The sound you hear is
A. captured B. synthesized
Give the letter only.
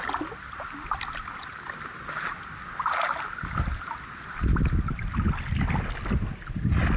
A